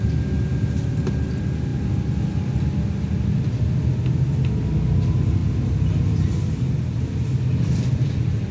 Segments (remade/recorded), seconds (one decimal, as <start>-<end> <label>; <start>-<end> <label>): 0.0-8.5 recorded

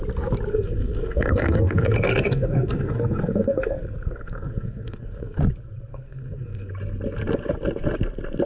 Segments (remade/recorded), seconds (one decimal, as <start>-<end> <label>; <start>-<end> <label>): 0.0-0.5 recorded; 0.5-5.4 remade; 5.4-5.9 recorded; 5.9-6.7 remade; 6.7-8.5 recorded

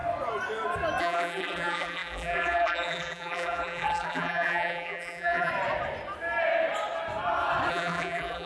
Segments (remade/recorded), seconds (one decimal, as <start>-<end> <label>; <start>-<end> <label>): 0.0-1.0 recorded; 1.0-5.5 remade; 5.5-7.7 recorded; 7.7-8.5 remade

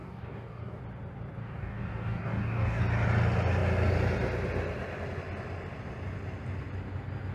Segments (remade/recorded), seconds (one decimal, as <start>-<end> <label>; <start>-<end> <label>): 0.0-0.8 remade; 0.8-1.4 recorded; 1.4-2.8 remade; 2.8-7.3 recorded

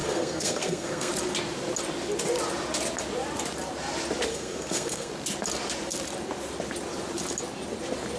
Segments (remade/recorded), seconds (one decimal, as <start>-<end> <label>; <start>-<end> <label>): 0.0-1.1 remade; 1.1-4.3 recorded; 4.3-5.1 remade; 5.1-8.2 recorded

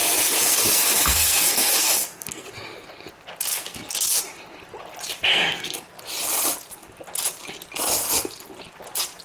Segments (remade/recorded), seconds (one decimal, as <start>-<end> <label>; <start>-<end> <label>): 0.0-2.5 remade; 2.5-3.5 recorded; 3.5-4.2 remade; 4.2-5.2 recorded; 5.2-6.0 remade; 6.0-9.2 recorded